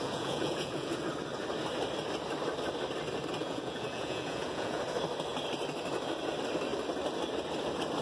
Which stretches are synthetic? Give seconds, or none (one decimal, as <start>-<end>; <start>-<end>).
0.0-1.1; 3.4-4.8